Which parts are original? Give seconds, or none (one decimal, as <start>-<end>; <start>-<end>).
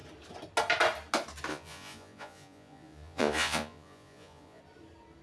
0.0-1.5; 4.6-5.2